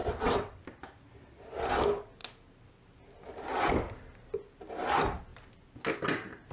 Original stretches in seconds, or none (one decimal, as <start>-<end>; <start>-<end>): 0.6-6.5